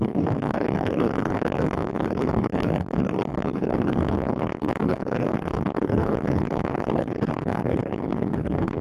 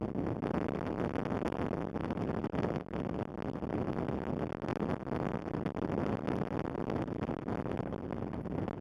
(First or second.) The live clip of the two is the second